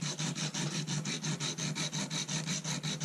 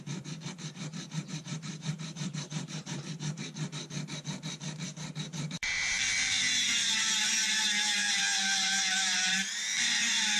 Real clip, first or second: first